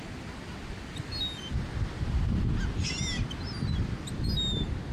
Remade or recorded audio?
recorded